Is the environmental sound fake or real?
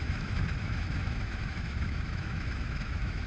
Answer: fake